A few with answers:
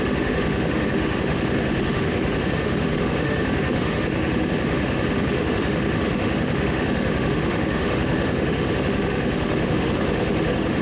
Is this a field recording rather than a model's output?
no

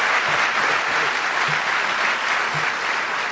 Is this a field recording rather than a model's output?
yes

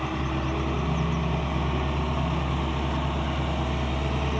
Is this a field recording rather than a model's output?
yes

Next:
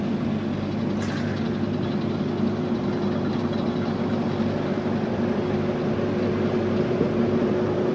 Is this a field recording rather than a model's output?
yes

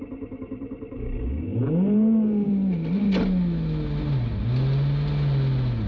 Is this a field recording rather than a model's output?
yes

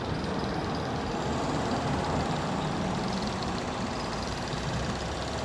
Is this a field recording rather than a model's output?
yes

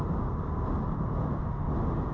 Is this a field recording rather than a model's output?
yes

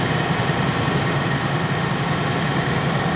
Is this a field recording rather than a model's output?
yes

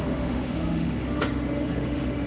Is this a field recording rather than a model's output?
no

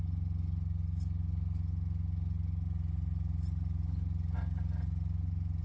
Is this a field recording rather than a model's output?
yes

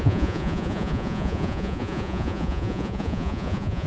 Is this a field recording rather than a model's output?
no